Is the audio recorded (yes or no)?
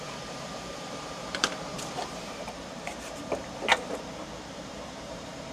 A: no